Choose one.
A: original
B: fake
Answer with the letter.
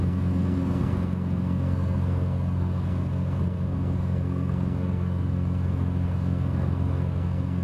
B